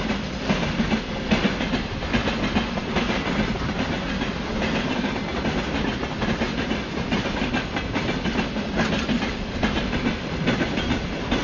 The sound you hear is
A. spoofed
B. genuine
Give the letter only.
B